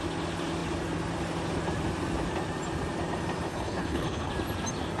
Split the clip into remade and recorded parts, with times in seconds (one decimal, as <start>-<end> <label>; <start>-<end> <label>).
0.0-3.5 recorded; 3.5-4.3 remade; 4.3-5.0 recorded